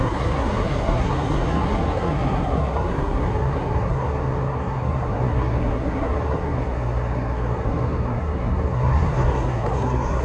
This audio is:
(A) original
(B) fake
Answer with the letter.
B